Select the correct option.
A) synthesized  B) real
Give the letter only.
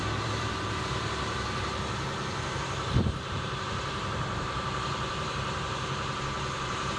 A